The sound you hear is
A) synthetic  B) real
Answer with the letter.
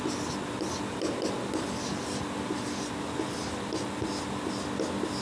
B